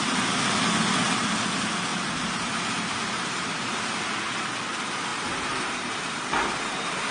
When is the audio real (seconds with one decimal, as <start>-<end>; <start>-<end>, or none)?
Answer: 0.0-1.9; 3.8-5.1; 6.2-7.1